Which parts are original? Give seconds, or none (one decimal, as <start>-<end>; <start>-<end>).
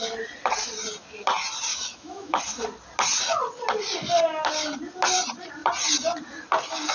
0.0-1.7; 2.4-6.9